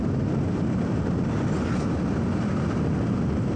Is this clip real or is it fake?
fake